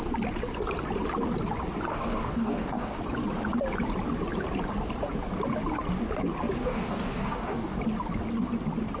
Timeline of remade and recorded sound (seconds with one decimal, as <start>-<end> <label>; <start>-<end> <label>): 0.0-1.9 recorded; 1.9-3.0 remade; 3.0-6.6 recorded; 6.6-7.8 remade; 7.8-9.0 recorded